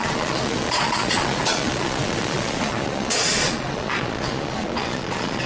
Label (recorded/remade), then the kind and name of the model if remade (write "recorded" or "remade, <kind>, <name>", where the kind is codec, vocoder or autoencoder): remade, vocoder, Vocos